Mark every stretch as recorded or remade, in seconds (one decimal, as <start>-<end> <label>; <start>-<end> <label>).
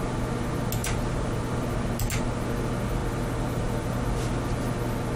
0.0-0.8 recorded; 0.8-1.8 remade; 1.8-3.0 recorded; 3.0-4.0 remade; 4.0-5.2 recorded